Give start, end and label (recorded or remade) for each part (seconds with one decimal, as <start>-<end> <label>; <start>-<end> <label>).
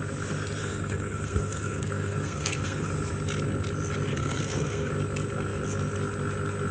0.0-0.6 recorded; 0.6-2.9 remade; 2.9-4.1 recorded; 4.1-4.9 remade; 4.9-6.7 recorded